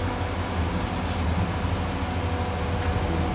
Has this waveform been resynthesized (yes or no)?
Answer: no